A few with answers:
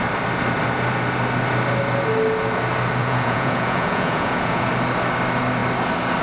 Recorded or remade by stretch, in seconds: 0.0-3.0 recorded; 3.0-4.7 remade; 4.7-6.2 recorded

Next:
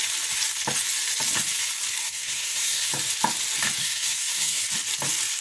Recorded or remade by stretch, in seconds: 0.0-2.0 recorded; 2.0-2.9 remade; 2.9-3.8 recorded; 3.8-4.7 remade; 4.7-5.4 recorded

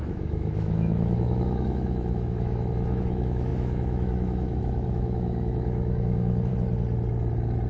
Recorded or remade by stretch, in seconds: 0.0-6.5 remade; 6.5-7.7 recorded

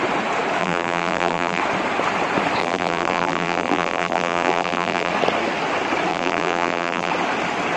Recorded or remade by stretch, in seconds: 0.0-0.6 recorded; 0.6-1.6 remade; 1.6-2.6 recorded; 2.6-5.1 remade; 5.1-6.1 recorded; 6.1-7.1 remade; 7.1-7.8 recorded

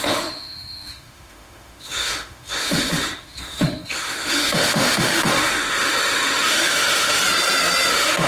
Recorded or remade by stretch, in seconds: 0.0-7.2 remade; 7.2-7.9 recorded; 7.9-8.3 remade

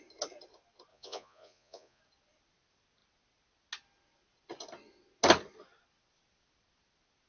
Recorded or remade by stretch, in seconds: 0.0-0.9 recorded; 0.9-2.0 remade; 2.0-7.3 recorded

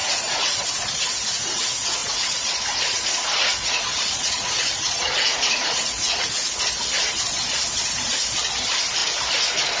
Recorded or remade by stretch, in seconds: 0.0-0.6 remade; 0.6-2.0 recorded; 2.0-6.6 remade; 6.6-9.8 recorded

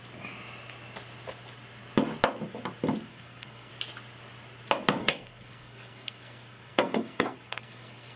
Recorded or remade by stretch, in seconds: 0.0-3.1 recorded; 3.1-3.7 remade; 3.7-5.0 recorded; 5.0-8.2 remade